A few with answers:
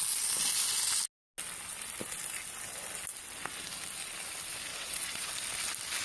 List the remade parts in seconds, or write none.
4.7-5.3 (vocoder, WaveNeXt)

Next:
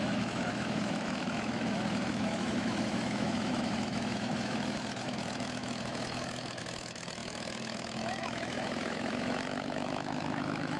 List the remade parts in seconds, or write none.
0.0-10.8 (autoencoder, DAC-VAE)

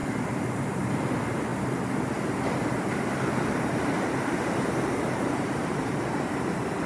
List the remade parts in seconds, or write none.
0.0-0.9 (vocoder, BigVGAN v2)

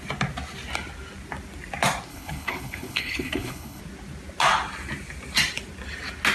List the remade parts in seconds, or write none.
2.1-3.8 (codec, HILCodec)